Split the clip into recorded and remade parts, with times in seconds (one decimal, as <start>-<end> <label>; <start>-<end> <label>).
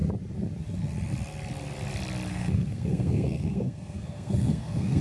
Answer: 0.0-2.3 recorded; 2.3-5.0 remade